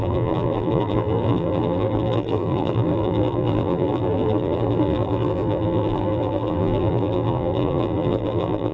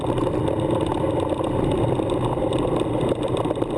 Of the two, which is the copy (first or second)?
first